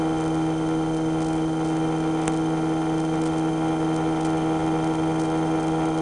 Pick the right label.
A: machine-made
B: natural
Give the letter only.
B